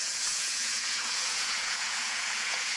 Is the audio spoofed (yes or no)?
yes